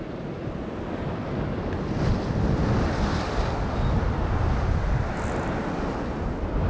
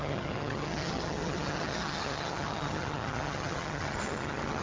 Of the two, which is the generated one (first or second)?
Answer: second